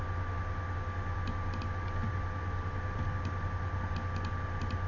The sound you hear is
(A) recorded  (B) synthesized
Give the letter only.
A